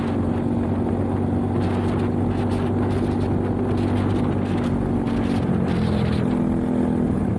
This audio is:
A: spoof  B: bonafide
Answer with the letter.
B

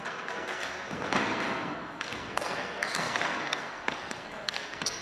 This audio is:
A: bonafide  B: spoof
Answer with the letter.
B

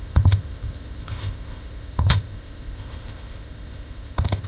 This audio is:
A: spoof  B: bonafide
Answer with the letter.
A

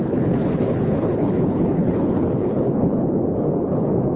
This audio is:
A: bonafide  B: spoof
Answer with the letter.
B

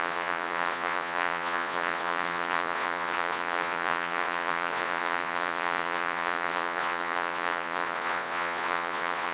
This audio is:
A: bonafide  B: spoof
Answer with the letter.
B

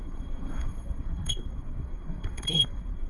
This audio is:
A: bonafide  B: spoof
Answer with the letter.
B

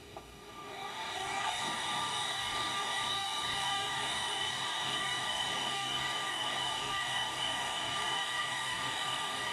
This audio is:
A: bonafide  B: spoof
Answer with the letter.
B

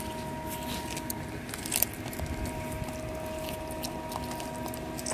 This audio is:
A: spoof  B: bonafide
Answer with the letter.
B